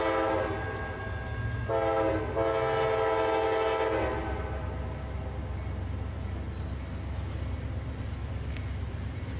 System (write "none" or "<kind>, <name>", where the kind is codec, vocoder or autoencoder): none